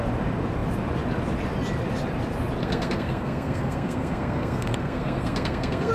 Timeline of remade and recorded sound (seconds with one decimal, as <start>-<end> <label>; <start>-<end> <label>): 0.0-2.6 recorded; 2.6-5.9 remade